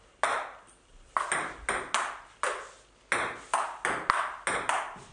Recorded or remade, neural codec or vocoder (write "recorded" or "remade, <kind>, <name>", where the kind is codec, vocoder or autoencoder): recorded